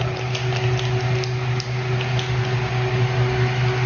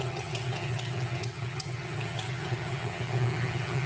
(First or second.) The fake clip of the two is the second